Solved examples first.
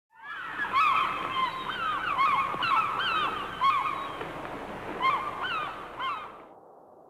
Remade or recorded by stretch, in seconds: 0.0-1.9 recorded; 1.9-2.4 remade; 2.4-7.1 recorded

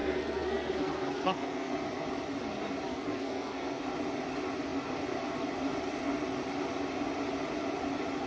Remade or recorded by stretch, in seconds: 0.0-1.7 remade; 1.7-2.9 recorded; 2.9-3.8 remade; 3.8-8.3 recorded

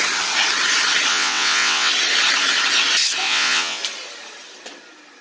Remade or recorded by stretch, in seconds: 0.0-1.1 recorded; 1.1-1.9 remade; 1.9-3.2 recorded; 3.2-3.8 remade; 3.8-5.2 recorded

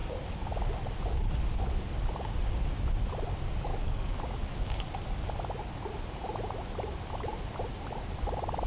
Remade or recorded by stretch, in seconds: 0.0-3.7 recorded; 3.7-4.8 remade; 4.8-8.7 recorded

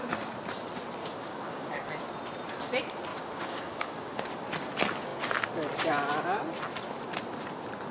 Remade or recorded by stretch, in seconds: 0.0-1.0 recorded; 1.0-1.9 remade; 1.9-3.1 recorded; 3.1-4.2 remade; 4.2-7.9 recorded

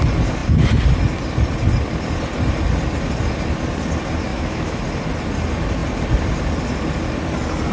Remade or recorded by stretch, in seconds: 0.0-4.3 recorded; 4.3-4.8 remade; 4.8-7.7 recorded

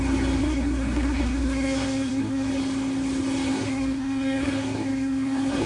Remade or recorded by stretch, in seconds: 0.0-0.4 recorded; 0.4-2.5 remade; 2.5-3.5 recorded; 3.5-5.7 remade